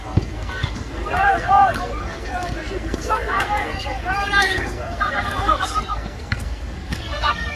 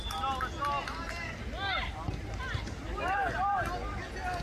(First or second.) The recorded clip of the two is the second